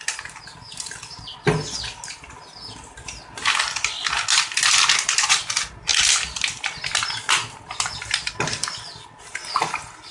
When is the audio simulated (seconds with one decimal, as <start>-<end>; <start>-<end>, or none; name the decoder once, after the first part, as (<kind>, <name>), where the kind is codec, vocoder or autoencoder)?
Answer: none